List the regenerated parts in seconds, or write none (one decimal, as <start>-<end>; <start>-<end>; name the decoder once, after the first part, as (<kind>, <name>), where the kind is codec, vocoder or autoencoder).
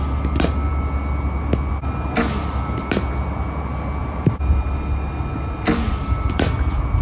none